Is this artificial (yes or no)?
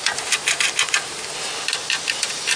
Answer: no